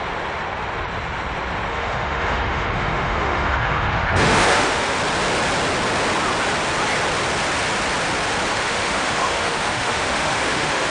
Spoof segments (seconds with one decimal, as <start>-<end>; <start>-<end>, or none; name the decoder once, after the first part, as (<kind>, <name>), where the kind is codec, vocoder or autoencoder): 1.7-5.0 (autoencoder, DAC-VAE); 8.5-10.9